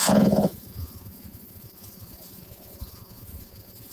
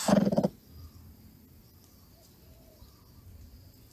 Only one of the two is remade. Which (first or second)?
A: first